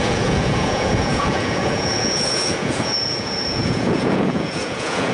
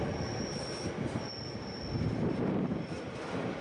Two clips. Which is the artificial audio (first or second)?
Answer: first